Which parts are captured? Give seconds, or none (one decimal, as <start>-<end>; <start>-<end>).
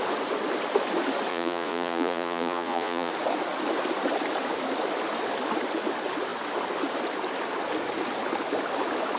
0.0-1.3; 3.1-9.2